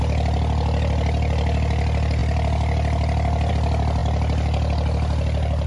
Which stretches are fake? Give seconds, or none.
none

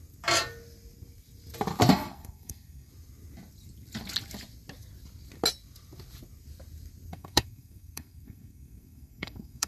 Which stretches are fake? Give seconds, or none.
1.9-2.9 (codec, SNAC); 7.1-9.7

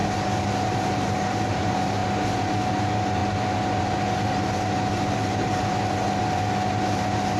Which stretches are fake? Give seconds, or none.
none

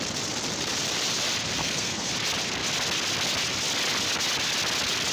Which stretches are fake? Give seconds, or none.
1.6-2.1 (codec, SNAC)

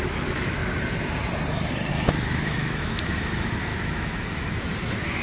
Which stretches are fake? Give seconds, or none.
0.0-0.6 (autoencoder, DAC-VAE); 1.9-5.2

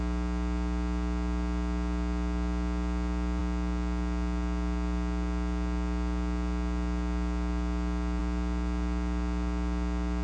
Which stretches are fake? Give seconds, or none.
none